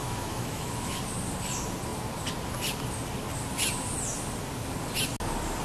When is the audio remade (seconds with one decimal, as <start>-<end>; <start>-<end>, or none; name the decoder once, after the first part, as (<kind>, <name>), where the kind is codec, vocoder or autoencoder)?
0.0-1.0 (autoencoder, DAC-VAE)